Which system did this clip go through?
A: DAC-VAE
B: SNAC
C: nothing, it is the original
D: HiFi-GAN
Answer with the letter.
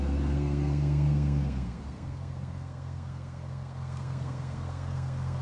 B